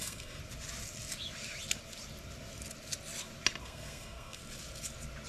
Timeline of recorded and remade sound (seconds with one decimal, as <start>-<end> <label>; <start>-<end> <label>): 0.0-0.4 remade; 0.4-3.6 recorded; 3.6-4.4 remade; 4.4-5.3 recorded